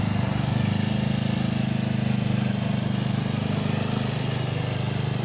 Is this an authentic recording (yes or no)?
yes